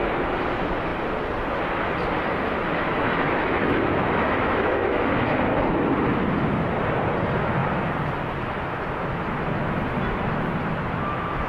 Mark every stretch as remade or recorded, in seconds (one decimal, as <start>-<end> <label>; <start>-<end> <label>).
0.0-2.9 recorded; 2.9-5.2 remade; 5.2-11.5 recorded